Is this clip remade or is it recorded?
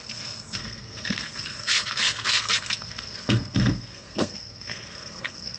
remade